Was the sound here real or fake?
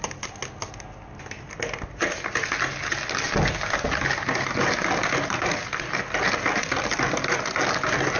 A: real